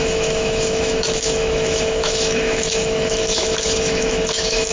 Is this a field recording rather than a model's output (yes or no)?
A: no